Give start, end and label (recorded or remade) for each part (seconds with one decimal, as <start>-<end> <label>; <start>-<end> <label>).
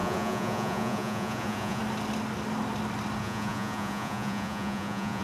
0.0-1.8 remade; 1.8-3.2 recorded; 3.2-5.2 remade